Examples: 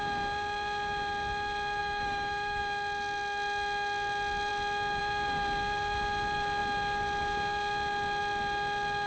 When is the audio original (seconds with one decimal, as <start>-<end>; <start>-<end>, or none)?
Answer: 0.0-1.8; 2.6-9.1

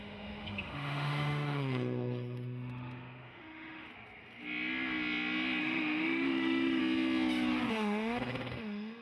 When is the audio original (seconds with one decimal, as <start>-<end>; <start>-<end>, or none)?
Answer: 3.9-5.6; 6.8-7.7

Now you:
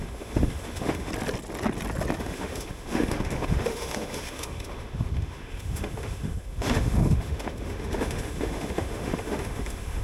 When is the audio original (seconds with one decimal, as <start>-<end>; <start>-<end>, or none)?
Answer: 1.1-2.2